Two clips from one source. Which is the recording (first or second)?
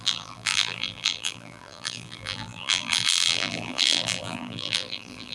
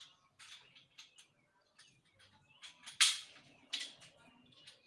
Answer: second